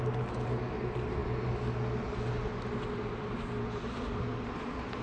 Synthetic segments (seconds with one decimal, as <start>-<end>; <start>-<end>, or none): none